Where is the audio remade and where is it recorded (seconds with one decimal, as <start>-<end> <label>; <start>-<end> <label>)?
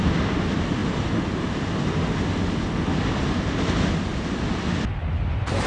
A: 0.0-5.7 recorded